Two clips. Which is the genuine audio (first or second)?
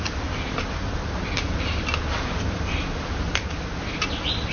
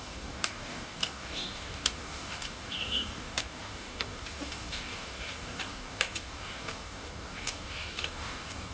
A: first